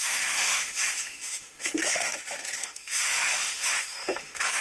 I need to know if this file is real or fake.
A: fake